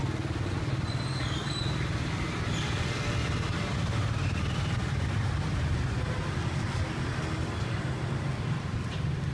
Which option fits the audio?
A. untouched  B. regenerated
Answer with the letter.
A